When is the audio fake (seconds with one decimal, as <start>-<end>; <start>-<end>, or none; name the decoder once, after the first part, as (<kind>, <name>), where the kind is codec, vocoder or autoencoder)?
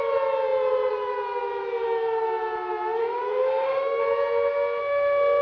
3.0-4.0 (autoencoder, DAC-VAE); 4.8-5.4